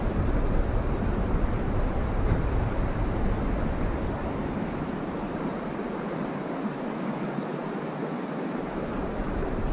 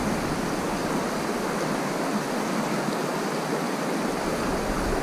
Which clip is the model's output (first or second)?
first